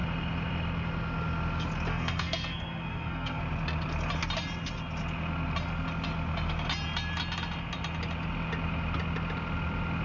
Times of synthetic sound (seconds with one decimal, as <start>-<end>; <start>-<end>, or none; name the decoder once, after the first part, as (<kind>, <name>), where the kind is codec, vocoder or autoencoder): 1.9-3.4 (codec, SNAC)